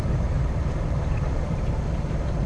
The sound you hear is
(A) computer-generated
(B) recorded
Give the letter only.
A